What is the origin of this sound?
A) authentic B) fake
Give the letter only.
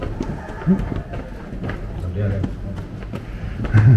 A